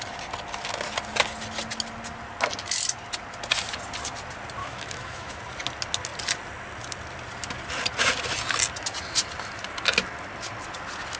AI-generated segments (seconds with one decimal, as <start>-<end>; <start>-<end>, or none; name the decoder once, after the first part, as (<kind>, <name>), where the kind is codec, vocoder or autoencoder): 4.6-5.4 (autoencoder, DAC-VAE)